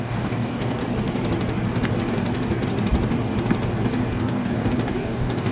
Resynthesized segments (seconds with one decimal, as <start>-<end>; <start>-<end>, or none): 0.0-0.8; 4.1-5.5